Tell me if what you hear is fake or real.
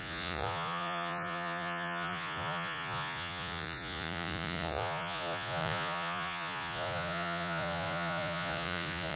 fake